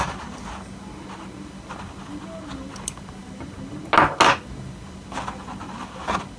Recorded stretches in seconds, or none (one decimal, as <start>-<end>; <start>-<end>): 0.0-6.4

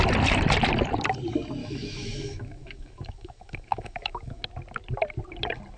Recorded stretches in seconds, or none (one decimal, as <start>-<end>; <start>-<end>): 0.0-1.6; 4.4-5.8

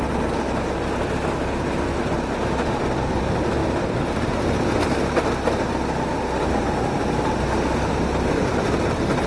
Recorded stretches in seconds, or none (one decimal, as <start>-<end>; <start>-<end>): 0.0-9.3